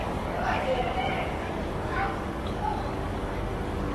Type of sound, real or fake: fake